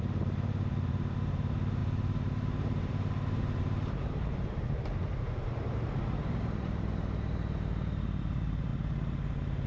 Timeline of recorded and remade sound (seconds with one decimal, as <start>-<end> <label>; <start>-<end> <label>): 0.0-8.7 remade; 8.7-9.7 recorded